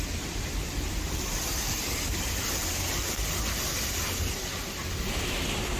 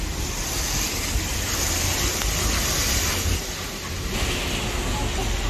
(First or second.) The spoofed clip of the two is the first